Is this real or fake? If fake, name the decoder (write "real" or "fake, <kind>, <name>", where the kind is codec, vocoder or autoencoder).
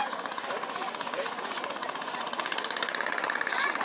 fake, vocoder, Vocos